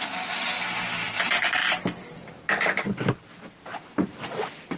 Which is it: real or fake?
real